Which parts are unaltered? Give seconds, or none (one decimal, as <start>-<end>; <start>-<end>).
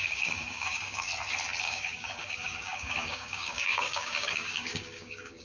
1.1-1.6